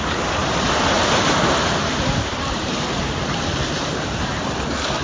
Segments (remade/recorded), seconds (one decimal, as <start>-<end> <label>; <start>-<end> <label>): 0.0-0.4 recorded; 0.4-2.7 remade; 2.7-3.5 recorded; 3.5-4.4 remade; 4.4-5.0 recorded